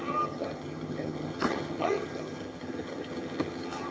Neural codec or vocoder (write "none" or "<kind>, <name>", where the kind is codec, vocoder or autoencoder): vocoder, HiFi-GAN